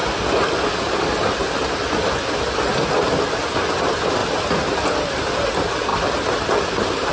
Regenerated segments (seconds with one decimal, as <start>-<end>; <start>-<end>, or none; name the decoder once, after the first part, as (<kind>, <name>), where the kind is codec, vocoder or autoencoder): none